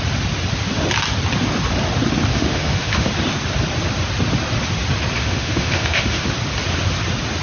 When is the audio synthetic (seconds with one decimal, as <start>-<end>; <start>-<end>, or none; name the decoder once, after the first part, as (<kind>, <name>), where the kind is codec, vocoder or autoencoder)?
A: 2.3-3.1 (autoencoder, DAC-VAE); 5.2-6.3